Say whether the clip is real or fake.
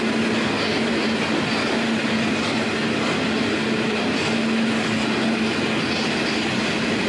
real